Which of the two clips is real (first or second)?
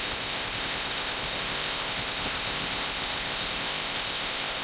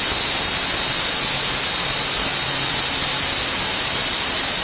second